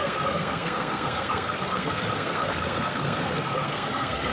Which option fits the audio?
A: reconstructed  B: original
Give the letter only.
A